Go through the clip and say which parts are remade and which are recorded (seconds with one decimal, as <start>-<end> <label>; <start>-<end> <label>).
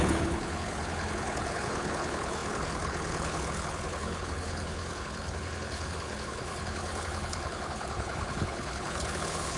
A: 0.0-9.6 remade